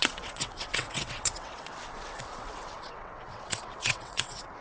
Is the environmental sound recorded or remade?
remade